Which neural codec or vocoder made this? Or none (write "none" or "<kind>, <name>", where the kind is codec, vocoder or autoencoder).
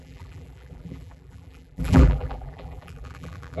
vocoder, BigVGAN v2